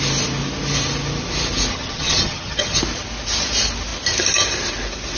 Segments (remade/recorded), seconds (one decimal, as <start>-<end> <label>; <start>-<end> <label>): 0.0-1.7 recorded; 1.7-2.8 remade; 2.8-5.2 recorded